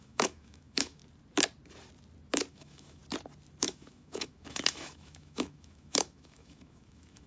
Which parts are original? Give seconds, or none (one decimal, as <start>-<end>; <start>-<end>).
1.0-2.5; 3.0-3.6